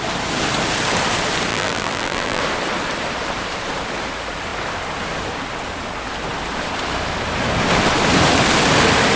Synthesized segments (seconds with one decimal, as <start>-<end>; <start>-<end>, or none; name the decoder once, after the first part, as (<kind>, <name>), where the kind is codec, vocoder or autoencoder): 1.5-2.4 (vocoder, BigVGAN v2)